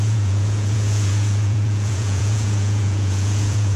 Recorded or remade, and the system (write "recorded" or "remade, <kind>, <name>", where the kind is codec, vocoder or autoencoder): remade, vocoder, Vocos